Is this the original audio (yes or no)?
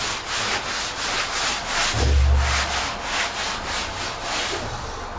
yes